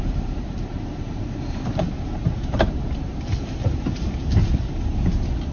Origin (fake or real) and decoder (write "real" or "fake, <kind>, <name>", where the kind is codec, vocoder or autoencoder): fake, vocoder, BigVGAN v2